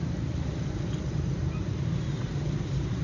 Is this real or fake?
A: fake